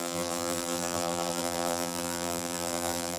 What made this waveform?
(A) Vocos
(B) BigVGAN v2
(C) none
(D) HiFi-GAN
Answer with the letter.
B